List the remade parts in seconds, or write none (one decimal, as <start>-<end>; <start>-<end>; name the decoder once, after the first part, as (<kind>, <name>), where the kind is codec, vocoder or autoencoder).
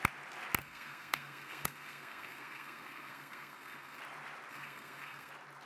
0.6-4.0 (codec, SNAC); 4.5-5.3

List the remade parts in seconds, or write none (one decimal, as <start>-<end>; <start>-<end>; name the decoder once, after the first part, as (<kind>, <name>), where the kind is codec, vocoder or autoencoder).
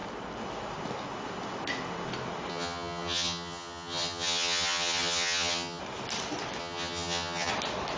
2.5-5.8 (vocoder, HiFi-GAN); 6.6-7.5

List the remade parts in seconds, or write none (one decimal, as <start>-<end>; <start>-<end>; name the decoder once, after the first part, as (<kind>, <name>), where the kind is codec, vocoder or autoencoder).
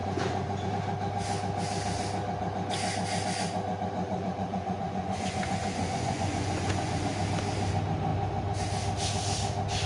0.0-0.7 (vocoder, Vocos); 4.0-7.0